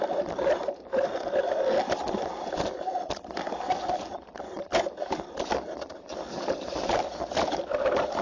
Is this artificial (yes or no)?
no